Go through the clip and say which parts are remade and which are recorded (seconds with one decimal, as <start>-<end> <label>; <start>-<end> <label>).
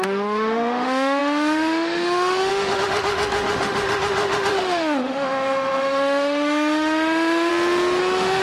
0.0-7.5 remade; 7.5-8.0 recorded; 8.0-8.4 remade